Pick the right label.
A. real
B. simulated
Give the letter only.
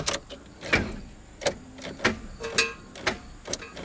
A